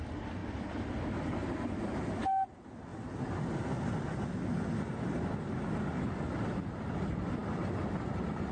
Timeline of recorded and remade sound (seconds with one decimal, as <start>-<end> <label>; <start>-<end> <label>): 0.0-8.5 recorded